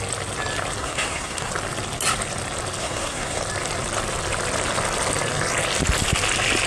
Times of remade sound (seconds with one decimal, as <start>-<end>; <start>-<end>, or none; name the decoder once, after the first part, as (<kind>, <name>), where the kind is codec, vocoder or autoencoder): 0.8-1.5 (codec, SNAC); 2.8-3.4